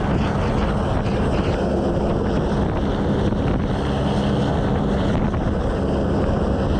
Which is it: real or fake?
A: real